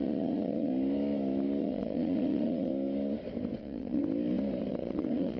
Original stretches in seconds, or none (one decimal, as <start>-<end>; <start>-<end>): 0.7-1.6; 2.7-3.6; 4.0-4.7